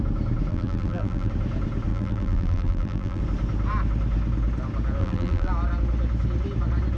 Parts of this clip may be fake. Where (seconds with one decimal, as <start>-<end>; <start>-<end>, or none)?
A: 0.5-1.3; 1.9-3.2; 5.0-5.5